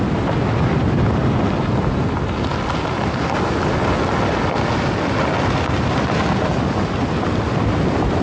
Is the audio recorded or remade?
recorded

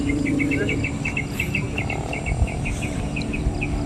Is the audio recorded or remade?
remade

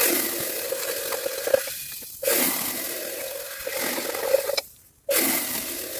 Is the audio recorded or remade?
recorded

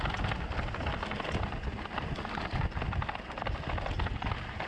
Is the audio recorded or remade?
recorded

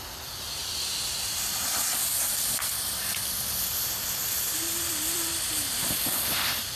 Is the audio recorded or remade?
remade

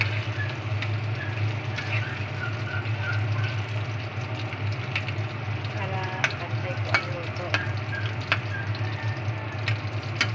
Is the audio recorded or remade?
recorded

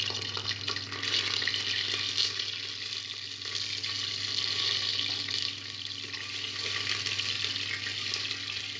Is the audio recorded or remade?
recorded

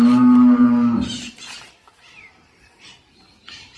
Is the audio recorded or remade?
remade